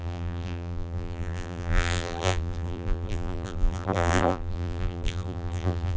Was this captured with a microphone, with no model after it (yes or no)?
no